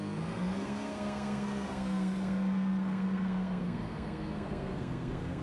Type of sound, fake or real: fake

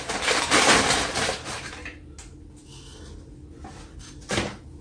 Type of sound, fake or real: real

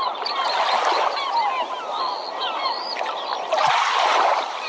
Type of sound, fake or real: real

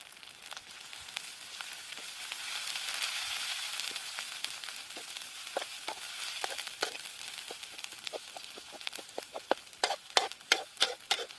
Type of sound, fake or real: real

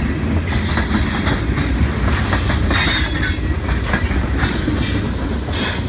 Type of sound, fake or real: real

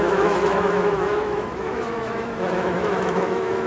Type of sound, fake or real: fake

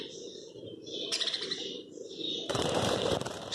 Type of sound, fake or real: fake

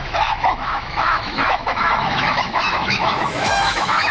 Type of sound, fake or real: fake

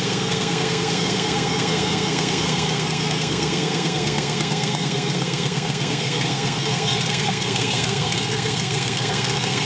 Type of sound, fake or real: fake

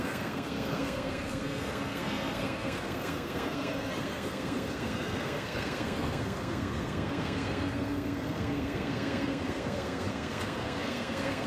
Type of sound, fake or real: fake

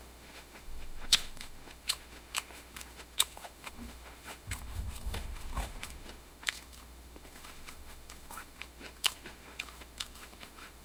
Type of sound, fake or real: fake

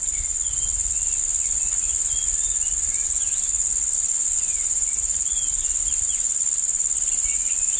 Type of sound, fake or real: real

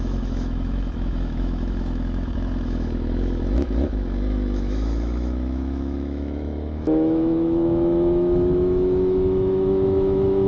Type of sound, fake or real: fake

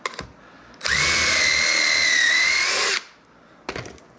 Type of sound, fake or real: real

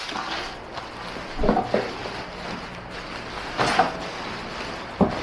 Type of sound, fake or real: real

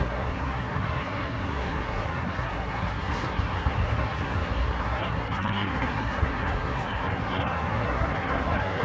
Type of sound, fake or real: fake